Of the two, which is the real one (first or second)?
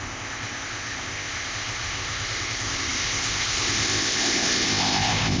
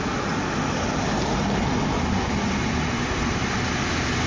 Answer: second